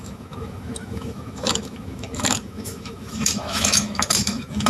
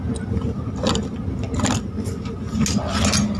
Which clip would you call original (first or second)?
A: second